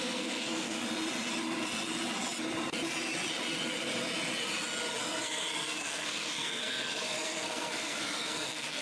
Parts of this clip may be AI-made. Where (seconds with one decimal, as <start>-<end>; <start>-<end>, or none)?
0.0-0.8; 5.0-8.8